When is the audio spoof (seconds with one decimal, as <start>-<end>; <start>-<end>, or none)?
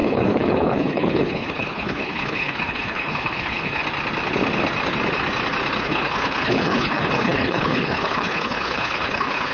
0.0-3.8; 5.8-9.5